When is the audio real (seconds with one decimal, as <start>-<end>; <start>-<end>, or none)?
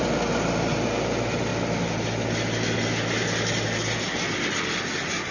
0.0-5.3